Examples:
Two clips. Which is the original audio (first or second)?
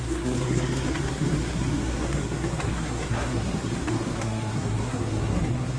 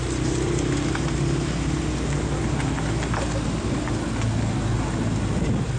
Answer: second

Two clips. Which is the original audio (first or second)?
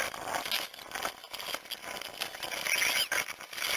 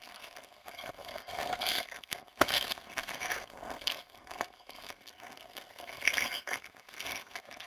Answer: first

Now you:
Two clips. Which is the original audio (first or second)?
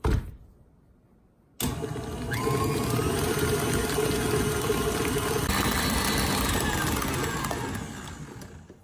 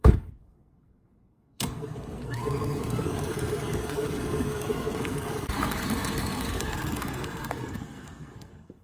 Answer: first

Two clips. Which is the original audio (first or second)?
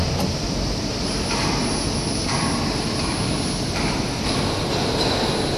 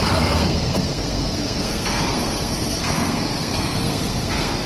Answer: first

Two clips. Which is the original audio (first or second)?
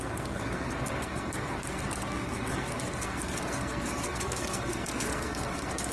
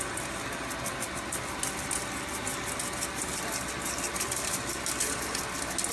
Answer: second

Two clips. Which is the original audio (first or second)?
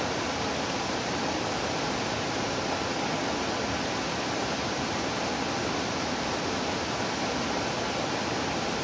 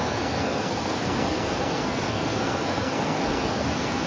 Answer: first